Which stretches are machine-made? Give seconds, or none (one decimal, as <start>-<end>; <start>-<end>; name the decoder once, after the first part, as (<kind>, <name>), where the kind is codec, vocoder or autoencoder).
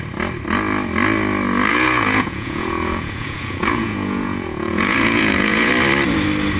1.7-5.7 (vocoder, Vocos)